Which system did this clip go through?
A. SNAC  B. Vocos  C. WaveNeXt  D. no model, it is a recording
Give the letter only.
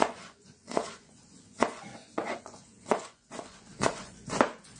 B